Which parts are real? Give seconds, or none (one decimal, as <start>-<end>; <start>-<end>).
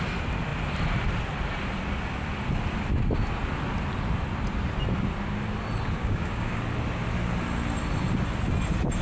0.0-6.0; 6.6-9.0